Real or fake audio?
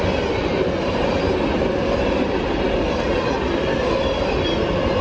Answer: real